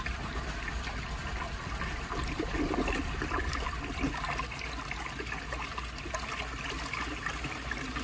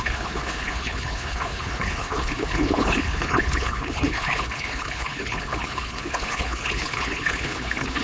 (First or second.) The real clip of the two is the first